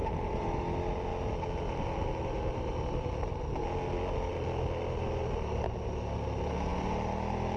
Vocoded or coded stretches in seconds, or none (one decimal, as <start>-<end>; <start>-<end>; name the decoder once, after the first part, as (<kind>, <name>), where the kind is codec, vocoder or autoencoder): 0.0-0.6 (vocoder, BigVGAN v2)